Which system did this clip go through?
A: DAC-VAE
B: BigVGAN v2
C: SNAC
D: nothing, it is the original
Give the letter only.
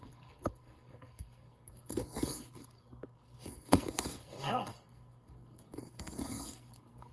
C